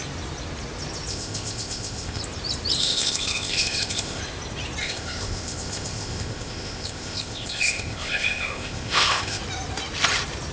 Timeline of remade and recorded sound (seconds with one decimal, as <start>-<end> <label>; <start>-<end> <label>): 0.0-1.1 recorded; 1.1-2.2 remade; 2.2-2.8 recorded; 2.8-4.2 remade; 4.2-4.8 recorded; 4.8-9.4 remade; 9.4-10.5 recorded